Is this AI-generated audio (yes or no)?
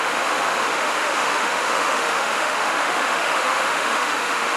yes